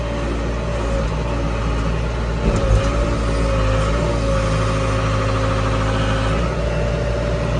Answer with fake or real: real